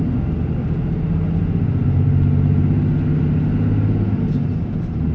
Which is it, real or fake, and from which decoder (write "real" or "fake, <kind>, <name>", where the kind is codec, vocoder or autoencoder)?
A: real